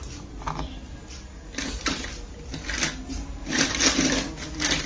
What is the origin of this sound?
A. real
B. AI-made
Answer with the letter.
A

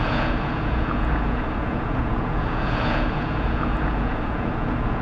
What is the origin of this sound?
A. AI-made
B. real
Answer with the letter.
A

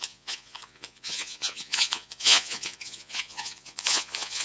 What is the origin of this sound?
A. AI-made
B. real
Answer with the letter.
A